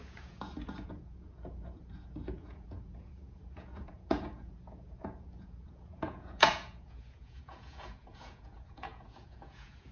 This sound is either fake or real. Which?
fake